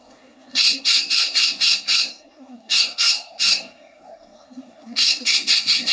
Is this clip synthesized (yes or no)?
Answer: yes